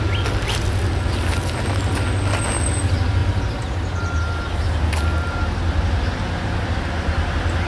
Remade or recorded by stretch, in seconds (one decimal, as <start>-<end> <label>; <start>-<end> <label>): 0.0-7.7 recorded